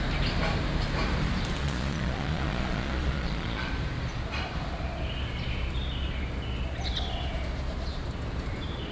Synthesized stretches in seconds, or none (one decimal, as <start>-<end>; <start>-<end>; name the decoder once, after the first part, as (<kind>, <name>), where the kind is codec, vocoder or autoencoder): 1.6-3.7 (vocoder, Vocos)